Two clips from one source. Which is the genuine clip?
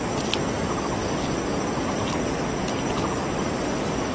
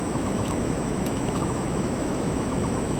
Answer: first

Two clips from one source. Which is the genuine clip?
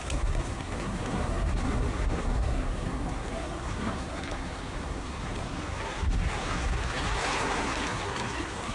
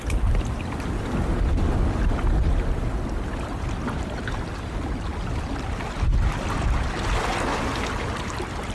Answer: second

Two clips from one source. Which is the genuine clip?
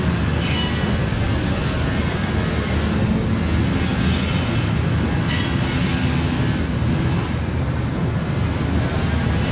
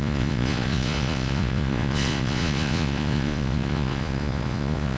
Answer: first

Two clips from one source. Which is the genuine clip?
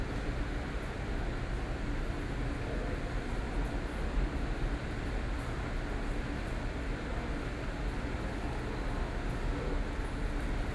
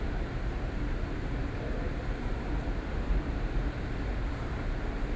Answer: first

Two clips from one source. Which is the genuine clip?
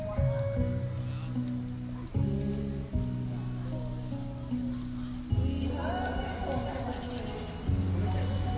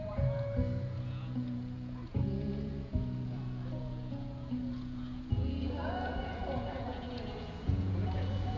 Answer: first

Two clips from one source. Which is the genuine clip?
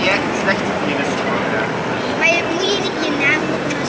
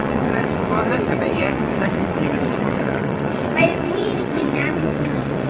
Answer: first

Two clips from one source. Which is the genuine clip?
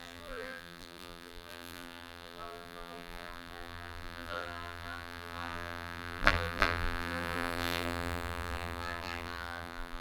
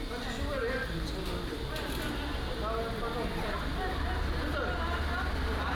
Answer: second